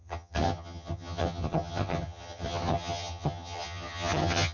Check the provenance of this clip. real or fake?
fake